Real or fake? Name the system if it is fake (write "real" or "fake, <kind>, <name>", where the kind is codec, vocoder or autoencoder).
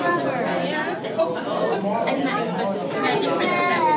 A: real